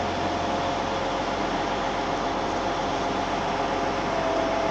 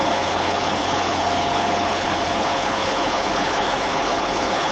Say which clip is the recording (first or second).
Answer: first